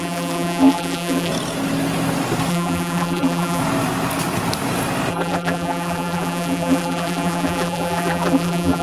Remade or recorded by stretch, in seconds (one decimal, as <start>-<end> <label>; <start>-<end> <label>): 0.0-1.3 remade; 1.3-2.5 recorded; 2.5-3.6 remade; 3.6-5.1 recorded; 5.1-8.8 remade